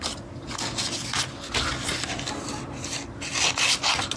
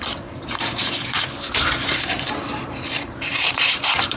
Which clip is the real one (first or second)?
first